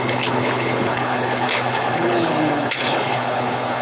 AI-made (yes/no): yes